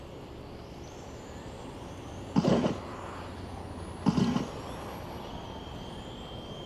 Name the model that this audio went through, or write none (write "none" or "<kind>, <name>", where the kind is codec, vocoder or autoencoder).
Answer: none